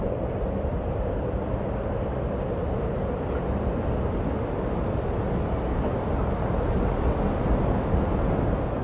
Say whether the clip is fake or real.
real